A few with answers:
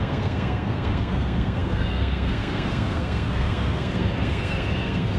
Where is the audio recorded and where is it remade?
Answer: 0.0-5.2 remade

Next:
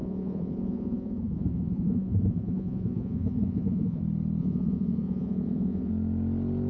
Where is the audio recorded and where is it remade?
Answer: 0.0-4.0 remade; 4.0-4.4 recorded; 4.4-5.9 remade; 5.9-6.7 recorded

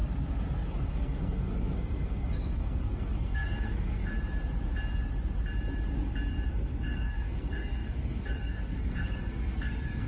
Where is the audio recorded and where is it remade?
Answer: 0.0-0.7 recorded; 0.7-4.0 remade; 4.0-6.5 recorded; 6.5-10.1 remade